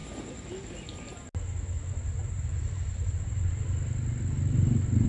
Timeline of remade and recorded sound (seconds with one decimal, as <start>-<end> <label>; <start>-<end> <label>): 0.0-0.5 remade; 0.5-2.2 recorded; 2.2-3.5 remade; 3.5-5.1 recorded